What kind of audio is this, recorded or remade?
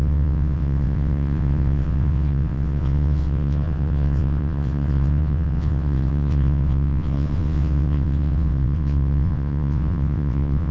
remade